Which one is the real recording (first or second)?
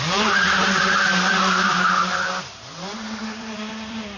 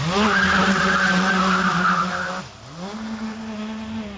second